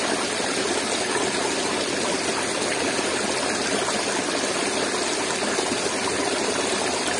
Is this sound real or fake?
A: real